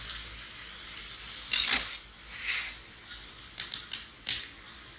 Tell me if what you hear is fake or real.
real